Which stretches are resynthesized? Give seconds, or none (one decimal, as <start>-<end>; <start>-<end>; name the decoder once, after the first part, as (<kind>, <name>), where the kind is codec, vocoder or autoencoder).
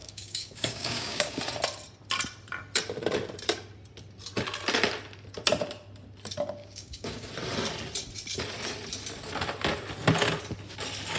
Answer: 0.0-1.4 (codec, DAC); 6.6-7.3